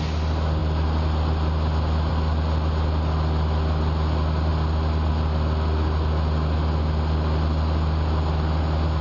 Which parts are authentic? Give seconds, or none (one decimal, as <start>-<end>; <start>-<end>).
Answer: 0.0-9.0